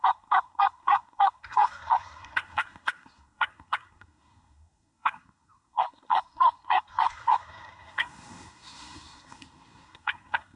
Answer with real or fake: fake